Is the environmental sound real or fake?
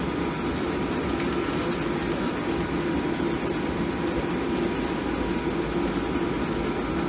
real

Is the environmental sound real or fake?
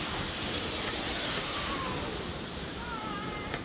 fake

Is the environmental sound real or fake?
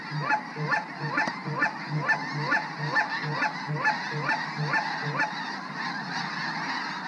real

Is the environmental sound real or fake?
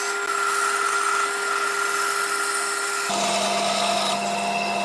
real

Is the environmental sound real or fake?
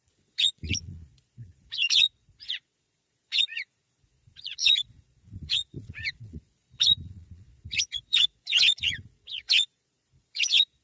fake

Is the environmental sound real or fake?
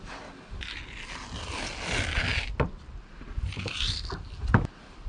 real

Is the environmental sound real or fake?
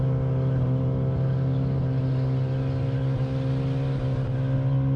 real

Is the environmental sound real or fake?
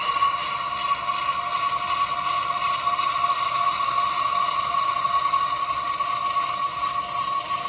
real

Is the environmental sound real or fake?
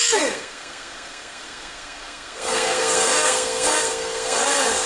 fake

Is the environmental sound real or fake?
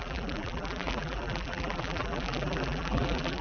fake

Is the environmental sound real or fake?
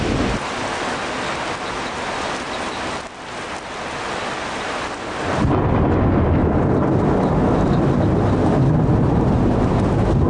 real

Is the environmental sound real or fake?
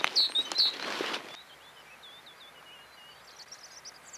real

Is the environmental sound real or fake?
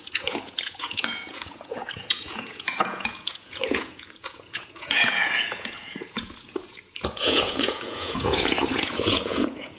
fake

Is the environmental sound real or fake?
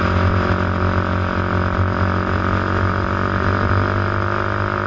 real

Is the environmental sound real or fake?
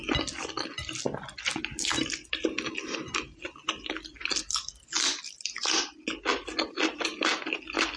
real